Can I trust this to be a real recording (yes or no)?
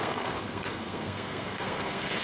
no